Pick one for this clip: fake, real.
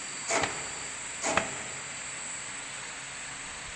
real